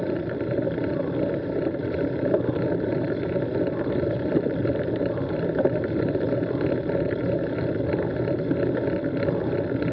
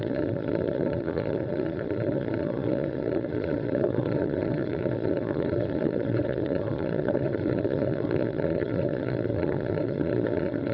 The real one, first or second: first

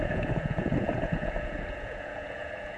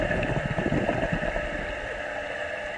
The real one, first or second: second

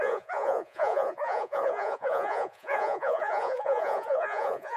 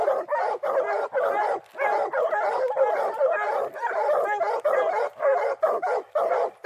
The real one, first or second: second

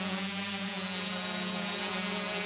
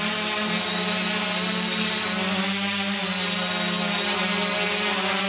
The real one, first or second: second